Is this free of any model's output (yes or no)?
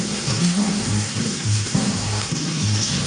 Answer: no